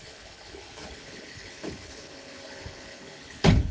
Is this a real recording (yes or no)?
no